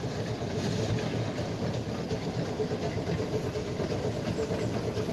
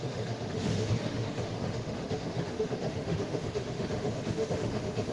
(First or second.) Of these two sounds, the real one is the first